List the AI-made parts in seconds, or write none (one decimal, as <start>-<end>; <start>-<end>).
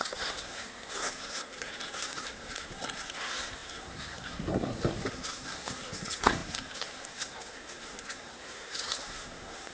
0.0-9.7